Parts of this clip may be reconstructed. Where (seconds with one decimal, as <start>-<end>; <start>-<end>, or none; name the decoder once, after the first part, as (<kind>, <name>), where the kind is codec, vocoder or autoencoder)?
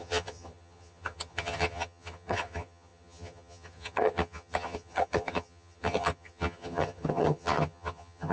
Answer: 0.0-8.3 (vocoder, HiFi-GAN)